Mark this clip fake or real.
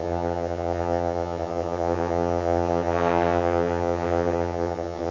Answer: fake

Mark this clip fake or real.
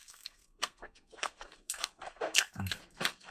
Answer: fake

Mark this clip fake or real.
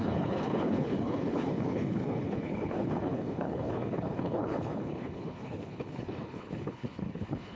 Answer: fake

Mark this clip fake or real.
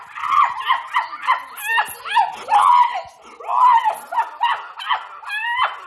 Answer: real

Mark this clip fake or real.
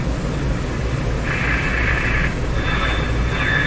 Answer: real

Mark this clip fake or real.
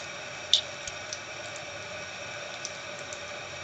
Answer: fake